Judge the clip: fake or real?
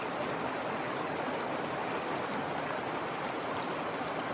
real